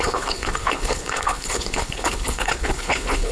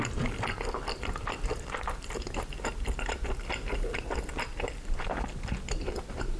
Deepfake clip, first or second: first